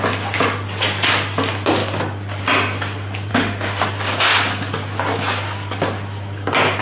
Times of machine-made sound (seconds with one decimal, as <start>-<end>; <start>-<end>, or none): 3.3-3.8